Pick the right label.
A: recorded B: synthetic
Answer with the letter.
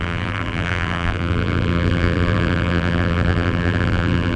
B